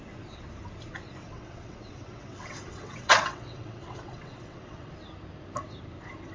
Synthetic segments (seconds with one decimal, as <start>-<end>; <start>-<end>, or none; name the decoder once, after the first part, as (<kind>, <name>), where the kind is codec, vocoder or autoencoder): 1.2-4.9 (vocoder, WaveNeXt)